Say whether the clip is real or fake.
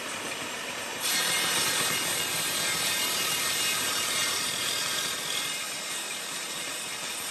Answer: fake